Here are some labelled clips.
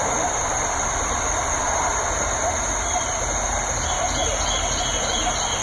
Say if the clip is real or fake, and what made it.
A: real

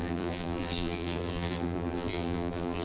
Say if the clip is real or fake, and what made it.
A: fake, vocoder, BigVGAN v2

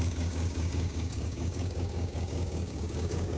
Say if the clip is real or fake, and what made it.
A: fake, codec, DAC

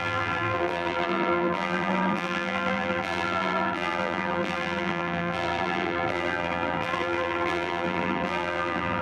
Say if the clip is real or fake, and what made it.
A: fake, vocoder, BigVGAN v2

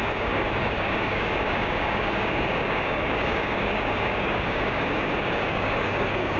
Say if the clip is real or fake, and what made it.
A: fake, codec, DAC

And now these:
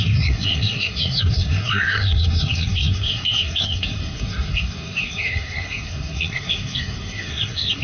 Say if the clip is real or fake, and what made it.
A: fake, codec, SNAC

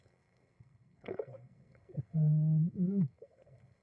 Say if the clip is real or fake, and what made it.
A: fake, codec, SNAC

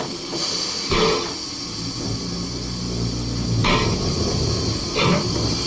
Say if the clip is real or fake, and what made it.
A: real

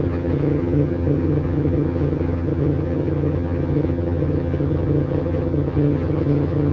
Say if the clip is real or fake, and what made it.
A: fake, vocoder, HiFi-GAN